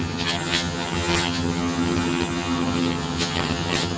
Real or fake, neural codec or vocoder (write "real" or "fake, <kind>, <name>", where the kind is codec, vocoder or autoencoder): fake, vocoder, HiFi-GAN